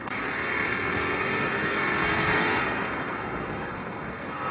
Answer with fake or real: fake